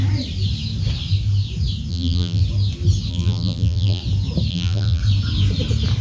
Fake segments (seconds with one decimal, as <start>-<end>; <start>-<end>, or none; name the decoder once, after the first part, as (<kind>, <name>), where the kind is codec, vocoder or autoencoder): 1.9-2.4 (vocoder, BigVGAN v2); 3.1-4.0; 4.5-5.0